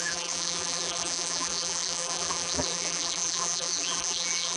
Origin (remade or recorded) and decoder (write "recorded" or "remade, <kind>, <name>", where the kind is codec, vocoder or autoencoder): remade, vocoder, BigVGAN v2